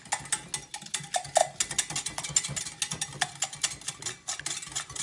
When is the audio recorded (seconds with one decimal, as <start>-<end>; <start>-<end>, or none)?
0.0-5.0